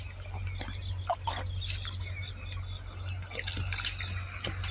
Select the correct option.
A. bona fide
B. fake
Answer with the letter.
A